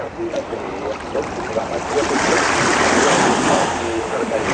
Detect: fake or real real